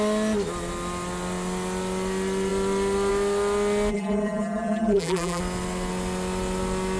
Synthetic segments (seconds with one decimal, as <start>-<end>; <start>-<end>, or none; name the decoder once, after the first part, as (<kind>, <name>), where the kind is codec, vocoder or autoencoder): 3.9-5.4 (vocoder, BigVGAN v2)